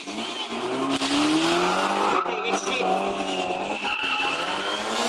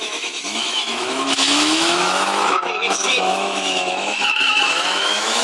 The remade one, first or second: second